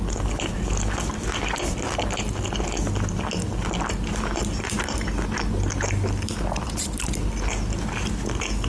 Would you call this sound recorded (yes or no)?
yes